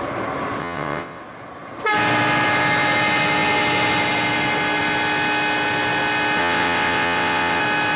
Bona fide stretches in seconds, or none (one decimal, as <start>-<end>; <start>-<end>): 0.0-0.6; 1.2-6.4; 7.6-8.0